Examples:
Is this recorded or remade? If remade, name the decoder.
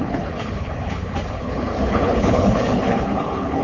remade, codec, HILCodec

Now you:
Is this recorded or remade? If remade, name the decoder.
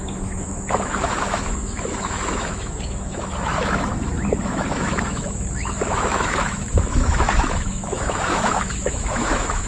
remade, autoencoder, DAC-VAE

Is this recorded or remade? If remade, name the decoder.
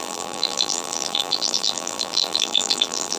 remade, vocoder, BigVGAN v2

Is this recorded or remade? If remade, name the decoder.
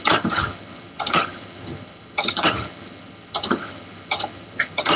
remade, vocoder, HiFi-GAN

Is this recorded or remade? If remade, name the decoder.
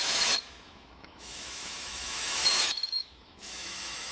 remade, autoencoder, DAC-VAE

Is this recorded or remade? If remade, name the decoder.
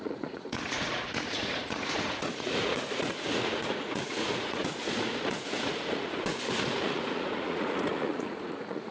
remade, vocoder, Vocos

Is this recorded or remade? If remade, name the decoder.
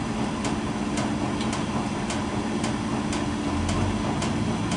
recorded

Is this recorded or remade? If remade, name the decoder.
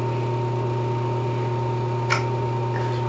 recorded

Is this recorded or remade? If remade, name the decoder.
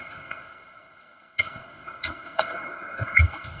remade, codec, SNAC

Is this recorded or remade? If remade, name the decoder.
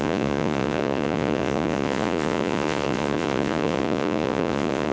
remade, vocoder, Vocos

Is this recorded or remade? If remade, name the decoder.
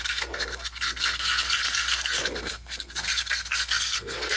remade, codec, SNAC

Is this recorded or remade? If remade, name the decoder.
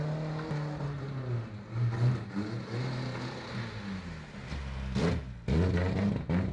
recorded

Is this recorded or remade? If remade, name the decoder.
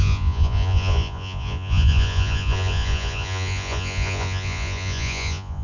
remade, vocoder, Vocos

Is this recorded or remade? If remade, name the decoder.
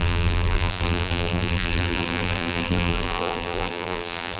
remade, vocoder, BigVGAN v2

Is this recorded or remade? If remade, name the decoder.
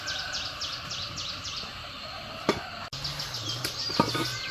recorded